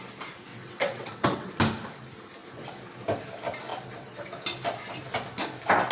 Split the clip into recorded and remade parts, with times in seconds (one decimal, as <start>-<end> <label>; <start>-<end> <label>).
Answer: 0.0-0.5 recorded; 0.5-1.5 remade; 1.5-5.9 recorded